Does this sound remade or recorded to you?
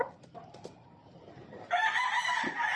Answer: recorded